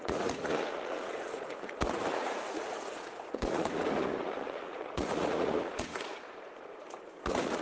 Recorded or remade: remade